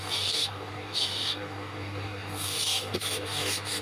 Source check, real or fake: fake